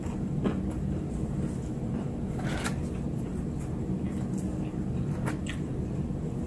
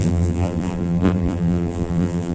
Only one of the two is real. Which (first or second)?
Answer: first